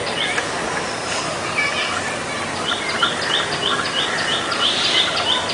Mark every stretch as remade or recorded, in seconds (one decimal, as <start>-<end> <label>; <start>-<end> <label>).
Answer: 0.0-5.5 recorded